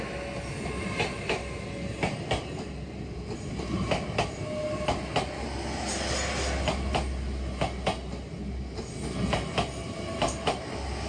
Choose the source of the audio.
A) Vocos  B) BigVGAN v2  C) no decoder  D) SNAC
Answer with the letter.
C